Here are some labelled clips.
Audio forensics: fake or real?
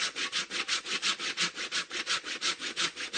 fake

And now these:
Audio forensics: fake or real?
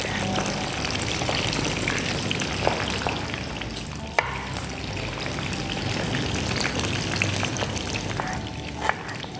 real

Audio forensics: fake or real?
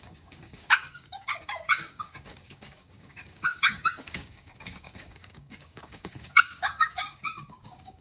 fake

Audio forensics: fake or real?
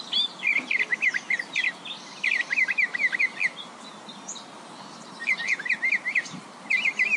real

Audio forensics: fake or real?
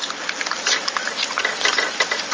real